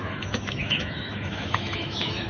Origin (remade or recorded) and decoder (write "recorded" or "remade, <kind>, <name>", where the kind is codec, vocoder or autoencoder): remade, autoencoder, DAC-VAE